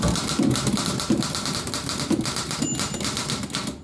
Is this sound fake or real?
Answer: real